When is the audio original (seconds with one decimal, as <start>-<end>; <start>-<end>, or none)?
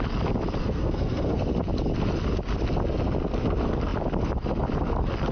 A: 0.0-0.6; 1.4-5.3